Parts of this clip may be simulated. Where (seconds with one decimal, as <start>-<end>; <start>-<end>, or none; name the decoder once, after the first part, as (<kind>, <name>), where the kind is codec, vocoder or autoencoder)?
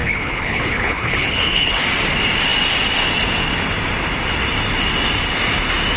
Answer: 0.0-1.8 (codec, HILCodec)